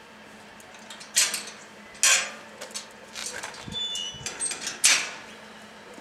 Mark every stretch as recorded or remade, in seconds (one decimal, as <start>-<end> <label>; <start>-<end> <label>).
0.0-6.0 recorded